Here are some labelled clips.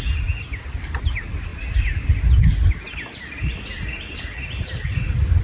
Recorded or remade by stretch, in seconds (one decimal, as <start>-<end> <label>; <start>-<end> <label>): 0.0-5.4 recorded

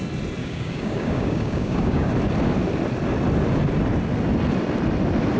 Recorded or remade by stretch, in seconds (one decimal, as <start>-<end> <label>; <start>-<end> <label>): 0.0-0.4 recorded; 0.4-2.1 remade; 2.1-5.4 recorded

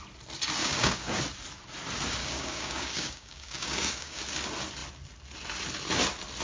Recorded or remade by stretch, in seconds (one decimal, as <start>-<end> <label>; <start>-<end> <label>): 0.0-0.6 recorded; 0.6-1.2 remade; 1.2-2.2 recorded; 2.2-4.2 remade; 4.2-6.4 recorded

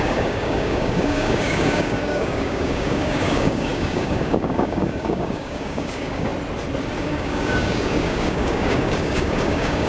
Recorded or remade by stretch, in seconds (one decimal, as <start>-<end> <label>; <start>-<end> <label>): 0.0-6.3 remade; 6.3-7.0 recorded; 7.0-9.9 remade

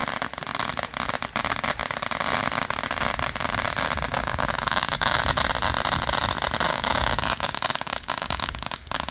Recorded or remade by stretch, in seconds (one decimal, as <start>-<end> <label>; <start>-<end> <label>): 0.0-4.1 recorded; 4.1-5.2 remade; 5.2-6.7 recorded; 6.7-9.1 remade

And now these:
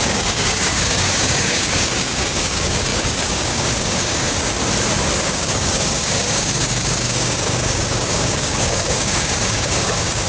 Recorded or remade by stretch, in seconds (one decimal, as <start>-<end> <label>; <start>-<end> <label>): 0.0-4.6 remade; 4.6-5.2 recorded; 5.2-10.3 remade